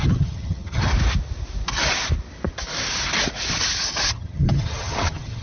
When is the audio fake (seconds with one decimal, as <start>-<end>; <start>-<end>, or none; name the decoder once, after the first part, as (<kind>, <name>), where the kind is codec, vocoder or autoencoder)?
0.0-0.9 (vocoder, HiFi-GAN); 4.1-5.4